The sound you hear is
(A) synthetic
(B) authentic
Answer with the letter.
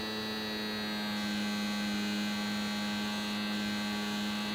B